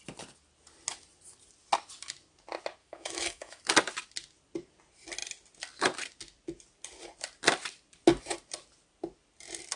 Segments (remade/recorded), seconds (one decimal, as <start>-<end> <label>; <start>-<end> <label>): 0.0-2.8 recorded; 2.8-3.6 remade; 3.6-9.8 recorded